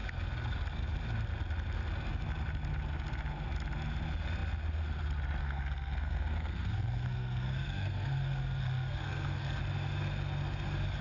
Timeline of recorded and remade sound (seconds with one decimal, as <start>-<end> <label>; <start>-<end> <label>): 0.0-5.4 recorded; 5.4-9.6 remade; 9.6-11.0 recorded